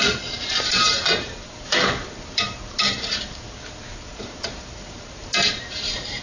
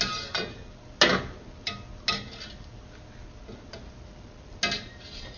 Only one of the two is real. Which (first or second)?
second